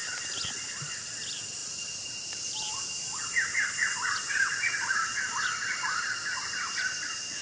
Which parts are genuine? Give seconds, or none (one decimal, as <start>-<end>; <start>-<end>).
0.0-7.4